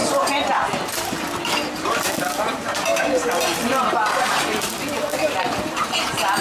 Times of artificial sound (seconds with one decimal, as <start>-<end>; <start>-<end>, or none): 2.4-4.7; 5.7-6.4